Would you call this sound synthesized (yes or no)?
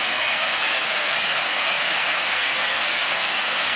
yes